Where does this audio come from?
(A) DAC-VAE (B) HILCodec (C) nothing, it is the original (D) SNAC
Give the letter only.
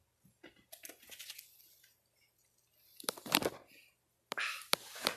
C